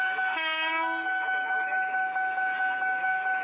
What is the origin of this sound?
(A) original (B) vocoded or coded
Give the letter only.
A